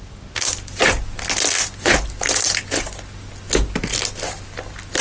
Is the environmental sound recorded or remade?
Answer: recorded